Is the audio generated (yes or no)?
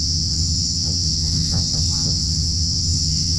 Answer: yes